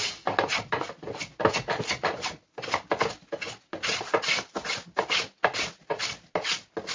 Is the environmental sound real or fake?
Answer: real